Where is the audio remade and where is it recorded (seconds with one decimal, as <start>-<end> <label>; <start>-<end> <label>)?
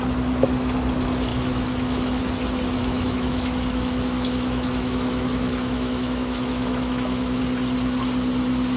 0.0-1.3 recorded; 1.3-2.2 remade; 2.2-2.8 recorded; 2.8-7.4 remade; 7.4-8.8 recorded